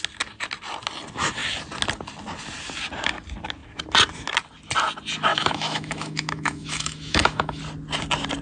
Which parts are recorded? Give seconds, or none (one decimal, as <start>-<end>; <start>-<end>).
0.0-5.3; 7.6-8.4